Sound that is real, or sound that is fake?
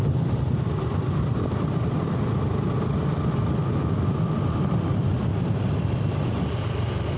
real